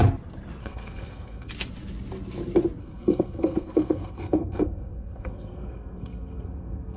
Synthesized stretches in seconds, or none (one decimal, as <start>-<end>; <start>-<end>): 0.6-1.5; 2.8-7.0